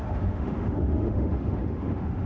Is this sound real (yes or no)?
no